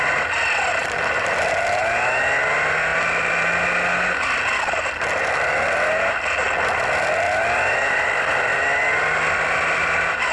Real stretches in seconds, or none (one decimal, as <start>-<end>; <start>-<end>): 0.0-10.3